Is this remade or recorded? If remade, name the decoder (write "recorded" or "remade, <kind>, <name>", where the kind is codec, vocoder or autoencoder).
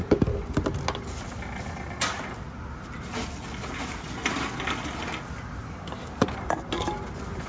recorded